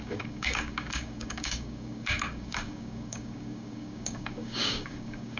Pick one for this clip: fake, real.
fake